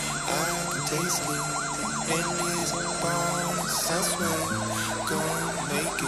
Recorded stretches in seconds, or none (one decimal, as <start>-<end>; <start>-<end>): 0.0-0.9; 1.9-2.6; 3.9-6.1